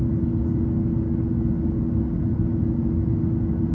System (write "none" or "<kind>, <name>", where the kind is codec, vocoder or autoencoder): none